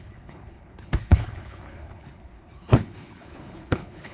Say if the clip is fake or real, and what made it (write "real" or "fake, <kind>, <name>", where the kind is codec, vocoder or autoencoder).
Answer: fake, codec, HILCodec